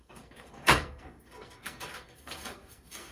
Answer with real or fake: fake